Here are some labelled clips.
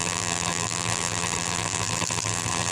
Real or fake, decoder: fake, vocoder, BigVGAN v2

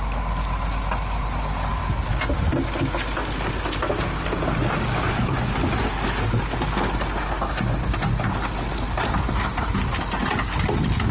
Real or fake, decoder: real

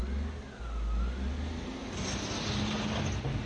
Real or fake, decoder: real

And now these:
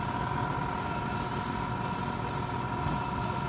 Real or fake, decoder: fake, vocoder, BigVGAN v2